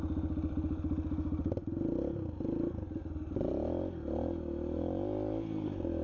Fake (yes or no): no